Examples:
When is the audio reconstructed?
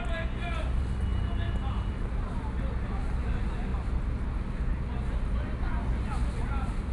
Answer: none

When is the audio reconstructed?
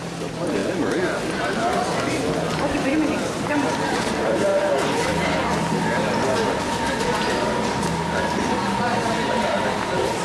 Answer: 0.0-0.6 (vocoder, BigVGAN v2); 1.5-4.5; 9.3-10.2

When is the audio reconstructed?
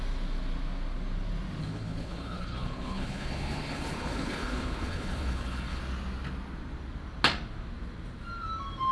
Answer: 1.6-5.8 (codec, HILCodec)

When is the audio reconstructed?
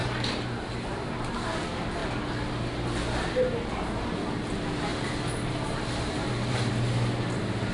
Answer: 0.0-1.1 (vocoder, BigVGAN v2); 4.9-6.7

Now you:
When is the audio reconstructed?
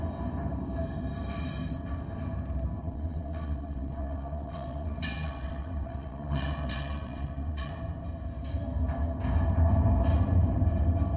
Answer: 2.8-7.7 (vocoder, WaveNeXt)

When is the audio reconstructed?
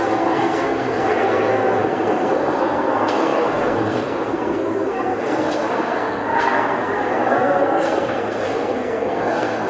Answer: 0.0-9.7 (codec, SNAC)